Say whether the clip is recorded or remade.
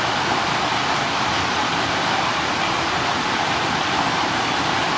recorded